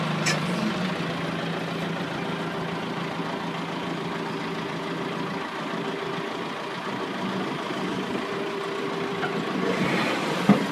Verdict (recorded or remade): recorded